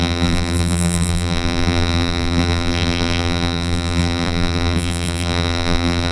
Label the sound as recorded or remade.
remade